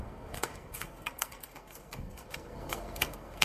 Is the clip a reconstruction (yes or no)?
yes